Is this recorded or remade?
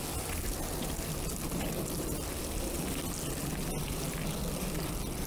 recorded